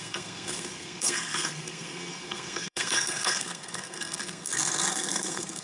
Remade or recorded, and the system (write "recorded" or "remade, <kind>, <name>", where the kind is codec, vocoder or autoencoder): remade, codec, SNAC